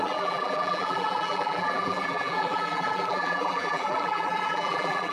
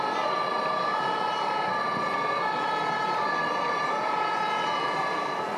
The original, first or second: second